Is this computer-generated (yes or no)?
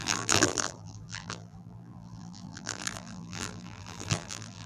yes